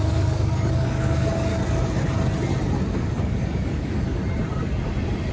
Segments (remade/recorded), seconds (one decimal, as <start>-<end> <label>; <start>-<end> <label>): 0.0-1.5 remade; 1.5-2.9 recorded; 2.9-4.2 remade; 4.2-5.3 recorded